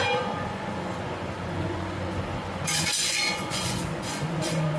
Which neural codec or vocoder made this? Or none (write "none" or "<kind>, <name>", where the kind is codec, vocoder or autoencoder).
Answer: vocoder, Vocos